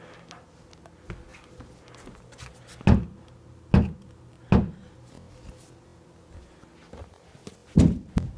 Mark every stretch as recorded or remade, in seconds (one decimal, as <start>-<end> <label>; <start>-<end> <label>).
0.0-8.4 recorded